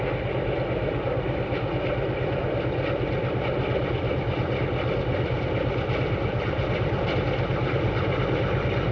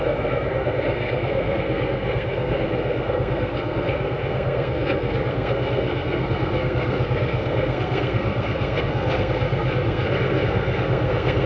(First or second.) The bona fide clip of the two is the first